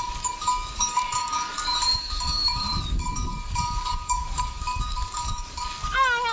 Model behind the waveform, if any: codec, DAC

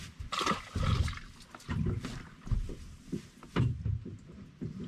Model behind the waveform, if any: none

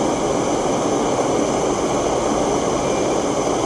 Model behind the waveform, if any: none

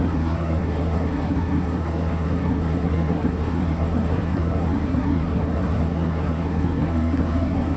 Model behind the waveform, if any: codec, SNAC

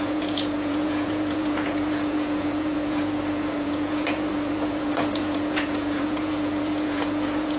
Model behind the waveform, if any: vocoder, Vocos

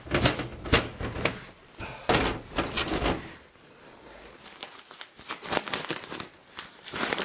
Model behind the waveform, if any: none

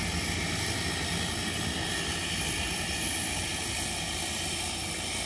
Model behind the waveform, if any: none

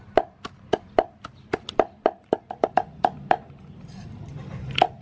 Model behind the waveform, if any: none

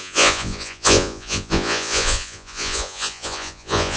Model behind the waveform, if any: vocoder, Vocos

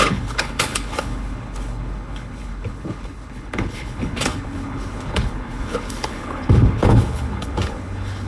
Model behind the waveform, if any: codec, HILCodec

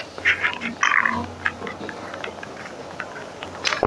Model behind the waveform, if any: none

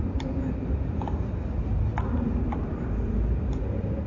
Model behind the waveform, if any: vocoder, BigVGAN v2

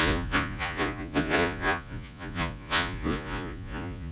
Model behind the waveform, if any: vocoder, Vocos